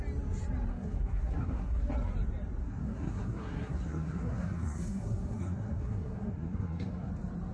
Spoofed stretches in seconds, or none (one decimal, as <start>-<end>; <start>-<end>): 0.7-1.8; 2.6-7.1